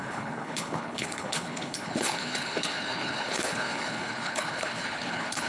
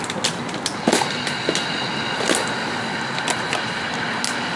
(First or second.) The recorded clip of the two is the second